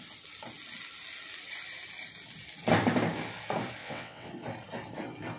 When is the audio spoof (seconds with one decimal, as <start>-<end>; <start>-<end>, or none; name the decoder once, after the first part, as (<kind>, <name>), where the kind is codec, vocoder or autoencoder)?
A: 3.8-4.3 (vocoder, WaveNeXt)